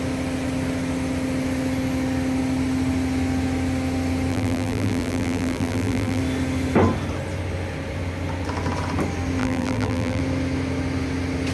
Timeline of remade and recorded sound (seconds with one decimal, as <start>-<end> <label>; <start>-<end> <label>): 0.0-4.3 recorded; 4.3-6.2 remade; 6.2-9.4 recorded; 9.4-10.2 remade; 10.2-11.5 recorded